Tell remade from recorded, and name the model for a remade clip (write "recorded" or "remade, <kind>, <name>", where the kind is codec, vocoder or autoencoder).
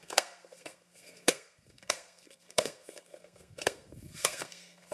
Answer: remade, codec, SNAC